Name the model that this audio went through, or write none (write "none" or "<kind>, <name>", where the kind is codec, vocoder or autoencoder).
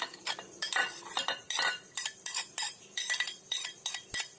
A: vocoder, BigVGAN v2